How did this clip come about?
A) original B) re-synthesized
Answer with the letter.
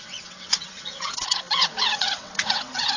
B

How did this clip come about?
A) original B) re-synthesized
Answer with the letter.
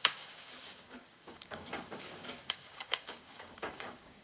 B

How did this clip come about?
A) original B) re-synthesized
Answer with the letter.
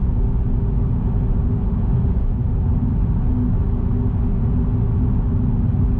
A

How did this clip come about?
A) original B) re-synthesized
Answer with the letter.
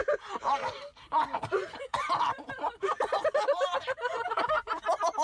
B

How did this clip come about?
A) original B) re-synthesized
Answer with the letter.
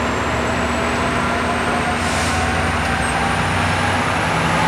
A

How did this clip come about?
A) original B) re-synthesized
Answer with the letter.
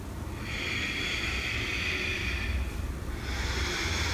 B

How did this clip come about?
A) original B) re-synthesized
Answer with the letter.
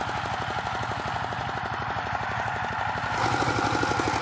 A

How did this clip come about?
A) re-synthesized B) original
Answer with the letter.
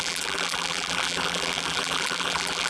A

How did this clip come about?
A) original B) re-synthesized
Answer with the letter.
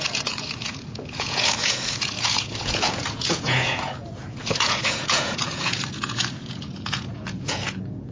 B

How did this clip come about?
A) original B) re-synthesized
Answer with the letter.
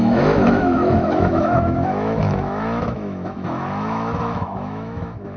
B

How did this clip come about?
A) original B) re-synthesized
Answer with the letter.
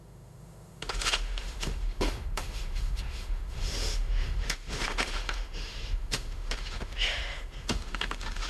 B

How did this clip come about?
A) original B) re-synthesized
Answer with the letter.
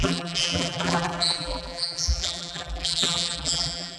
B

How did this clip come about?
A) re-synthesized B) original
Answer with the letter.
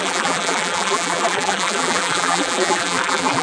A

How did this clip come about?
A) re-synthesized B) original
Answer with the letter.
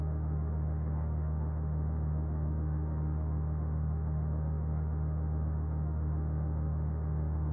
A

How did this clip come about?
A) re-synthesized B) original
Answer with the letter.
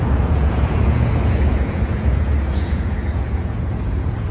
A